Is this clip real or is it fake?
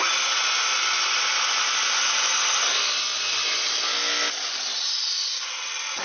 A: real